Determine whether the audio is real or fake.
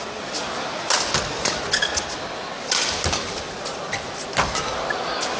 real